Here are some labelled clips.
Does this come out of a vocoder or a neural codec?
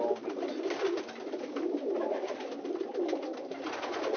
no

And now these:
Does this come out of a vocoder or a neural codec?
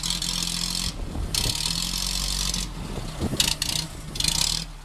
no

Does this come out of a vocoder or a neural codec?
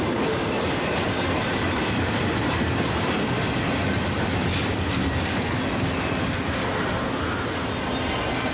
no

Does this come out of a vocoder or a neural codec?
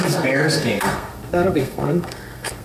yes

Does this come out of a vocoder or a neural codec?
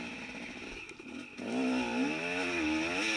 no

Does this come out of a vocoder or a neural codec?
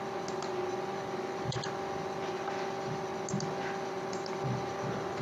no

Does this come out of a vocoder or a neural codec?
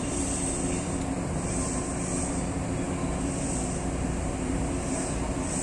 no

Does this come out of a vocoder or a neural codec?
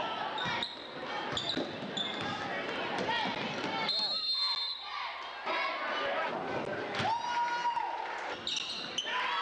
no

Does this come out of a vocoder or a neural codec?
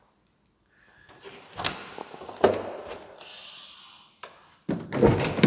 no